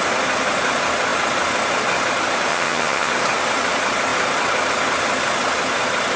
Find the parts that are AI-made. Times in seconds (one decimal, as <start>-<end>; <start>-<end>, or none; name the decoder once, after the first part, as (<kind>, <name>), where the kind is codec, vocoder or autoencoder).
2.5-3.1 (vocoder, HiFi-GAN)